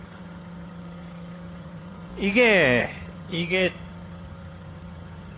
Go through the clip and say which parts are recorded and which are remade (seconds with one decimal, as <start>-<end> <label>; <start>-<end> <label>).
0.0-2.1 remade; 2.1-2.8 recorded; 2.8-5.4 remade